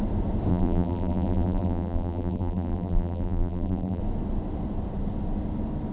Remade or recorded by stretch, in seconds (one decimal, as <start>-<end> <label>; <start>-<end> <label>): 0.0-0.5 recorded; 0.5-4.0 remade; 4.0-5.9 recorded